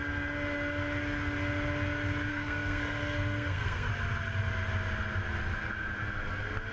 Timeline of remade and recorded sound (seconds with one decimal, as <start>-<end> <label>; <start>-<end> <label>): 0.0-2.3 recorded; 2.3-3.9 remade; 3.9-6.7 recorded

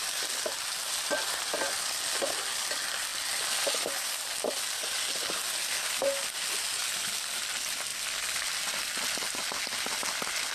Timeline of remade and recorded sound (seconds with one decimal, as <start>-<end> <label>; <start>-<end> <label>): 0.0-10.5 recorded

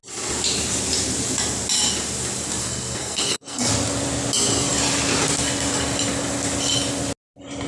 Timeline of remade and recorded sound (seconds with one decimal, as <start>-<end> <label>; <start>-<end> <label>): 0.0-2.6 recorded; 2.6-3.7 remade; 3.7-7.7 recorded